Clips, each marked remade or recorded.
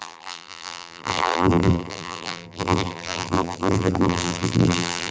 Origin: remade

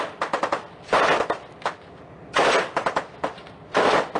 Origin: recorded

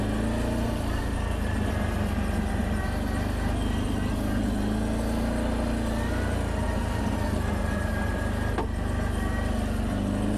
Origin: recorded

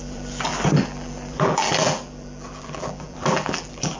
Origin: remade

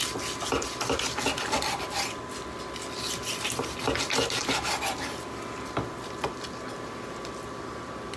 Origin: recorded